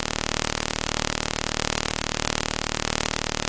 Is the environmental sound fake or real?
real